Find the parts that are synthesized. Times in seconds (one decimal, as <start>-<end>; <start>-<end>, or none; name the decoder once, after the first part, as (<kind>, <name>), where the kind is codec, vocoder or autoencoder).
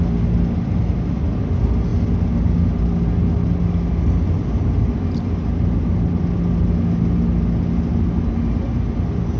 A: none